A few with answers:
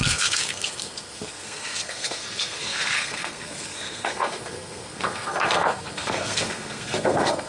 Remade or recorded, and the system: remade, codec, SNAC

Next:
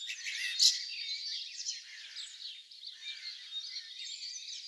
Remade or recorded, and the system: recorded